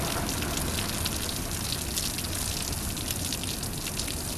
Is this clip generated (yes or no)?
no